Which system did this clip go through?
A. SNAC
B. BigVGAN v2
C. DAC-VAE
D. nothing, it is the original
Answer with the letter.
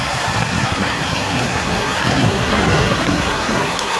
A